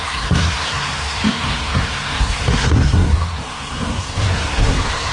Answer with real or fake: fake